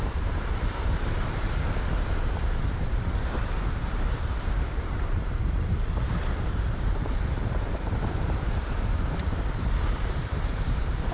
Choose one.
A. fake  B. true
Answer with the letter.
A